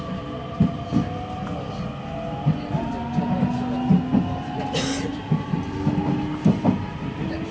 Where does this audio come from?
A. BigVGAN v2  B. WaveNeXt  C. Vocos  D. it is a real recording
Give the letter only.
D